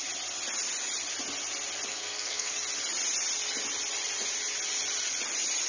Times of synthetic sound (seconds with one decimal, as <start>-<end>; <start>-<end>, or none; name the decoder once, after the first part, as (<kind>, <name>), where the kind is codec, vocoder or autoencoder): 1.9-2.5 (codec, SNAC)